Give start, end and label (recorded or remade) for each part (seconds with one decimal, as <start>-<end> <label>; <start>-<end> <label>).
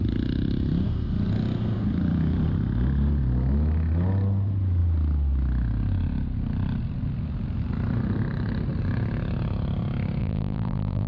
0.0-10.2 recorded; 10.2-11.1 remade